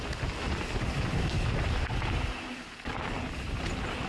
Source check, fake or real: real